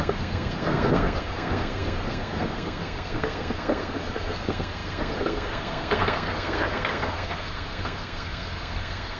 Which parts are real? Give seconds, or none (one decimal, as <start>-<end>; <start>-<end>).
none